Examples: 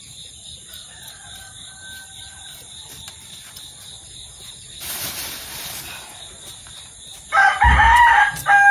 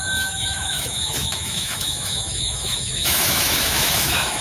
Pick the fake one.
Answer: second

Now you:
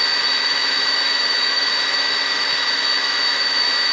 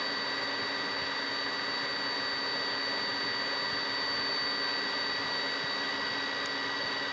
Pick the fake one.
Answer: first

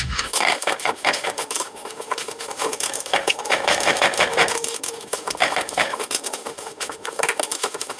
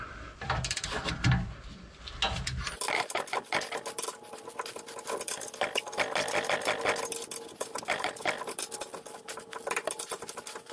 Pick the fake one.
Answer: first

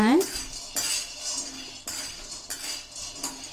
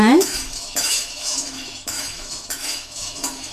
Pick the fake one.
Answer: second